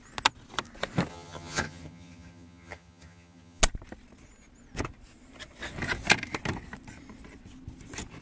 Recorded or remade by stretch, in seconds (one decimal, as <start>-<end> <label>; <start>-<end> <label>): 0.0-1.1 recorded; 1.1-3.6 remade; 3.6-8.2 recorded